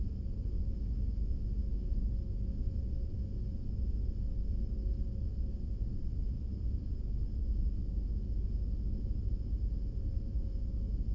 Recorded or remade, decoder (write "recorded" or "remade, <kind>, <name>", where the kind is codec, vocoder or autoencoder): recorded